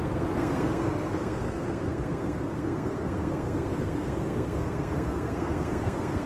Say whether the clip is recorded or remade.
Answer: remade